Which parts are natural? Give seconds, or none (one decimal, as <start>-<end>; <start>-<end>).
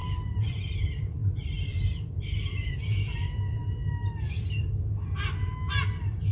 3.6-6.3